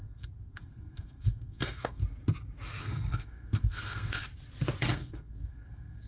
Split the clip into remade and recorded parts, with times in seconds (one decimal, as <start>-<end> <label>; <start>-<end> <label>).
0.0-2.0 remade; 2.0-2.8 recorded; 2.8-4.3 remade; 4.3-4.9 recorded; 4.9-6.1 remade